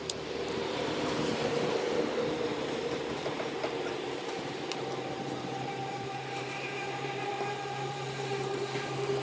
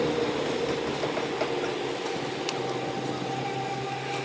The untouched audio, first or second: second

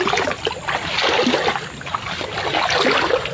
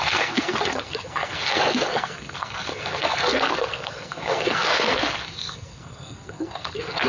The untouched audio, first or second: first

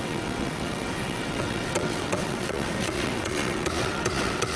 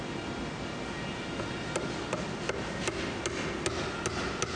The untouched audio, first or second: second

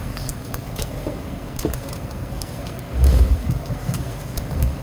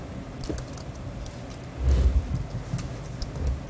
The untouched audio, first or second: second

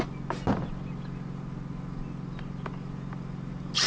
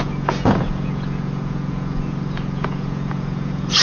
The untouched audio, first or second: first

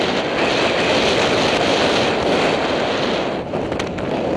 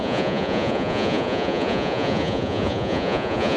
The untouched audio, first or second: first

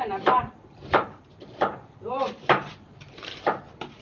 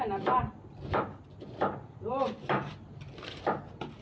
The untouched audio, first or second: second